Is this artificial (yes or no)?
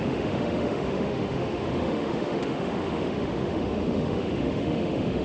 yes